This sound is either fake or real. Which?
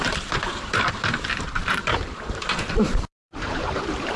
fake